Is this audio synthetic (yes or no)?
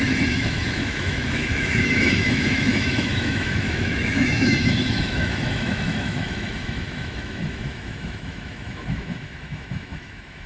yes